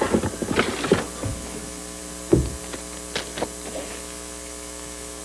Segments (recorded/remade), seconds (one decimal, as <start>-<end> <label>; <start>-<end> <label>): 0.0-1.3 recorded; 1.3-2.0 remade; 2.0-3.9 recorded; 3.9-5.2 remade